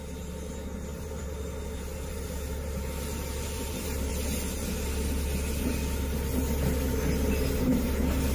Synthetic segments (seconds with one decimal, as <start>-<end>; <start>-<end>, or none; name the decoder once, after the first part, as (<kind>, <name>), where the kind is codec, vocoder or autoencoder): 0.9-4.1 (vocoder, BigVGAN v2)